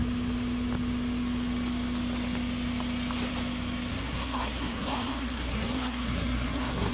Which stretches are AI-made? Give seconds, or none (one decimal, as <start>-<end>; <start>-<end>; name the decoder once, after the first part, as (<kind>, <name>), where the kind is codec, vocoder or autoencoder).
3.9-6.9 (codec, SNAC)